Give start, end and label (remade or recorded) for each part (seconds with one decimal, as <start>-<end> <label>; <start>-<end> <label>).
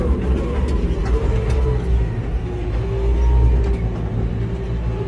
0.0-5.1 recorded